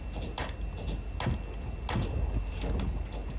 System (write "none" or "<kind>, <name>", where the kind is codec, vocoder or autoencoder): none